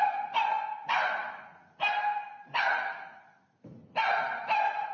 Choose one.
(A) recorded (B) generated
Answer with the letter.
A